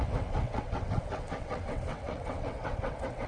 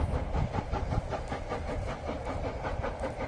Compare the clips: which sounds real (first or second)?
second